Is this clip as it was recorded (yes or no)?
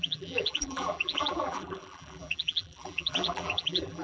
no